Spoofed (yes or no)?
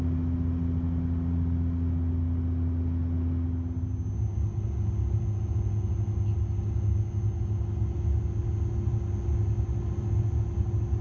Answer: no